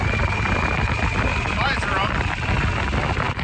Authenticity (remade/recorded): recorded